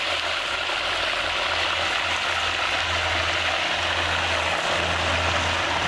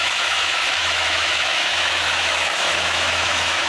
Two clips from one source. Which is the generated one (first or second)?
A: second